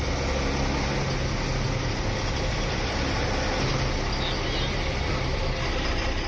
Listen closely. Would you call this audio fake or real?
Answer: real